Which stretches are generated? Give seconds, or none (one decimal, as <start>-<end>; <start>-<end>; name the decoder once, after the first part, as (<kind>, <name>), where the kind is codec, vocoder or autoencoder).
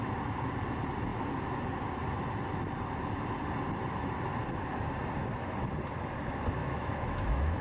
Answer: 6.6-7.6 (autoencoder, DAC-VAE)